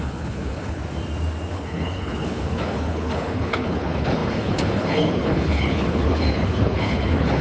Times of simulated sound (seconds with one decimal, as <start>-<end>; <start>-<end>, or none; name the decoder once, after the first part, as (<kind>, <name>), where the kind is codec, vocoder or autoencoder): 0.0-0.8 (codec, HILCodec); 1.5-7.4